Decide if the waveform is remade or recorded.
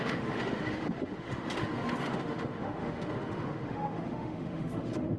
remade